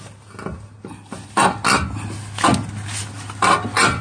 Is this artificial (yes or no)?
no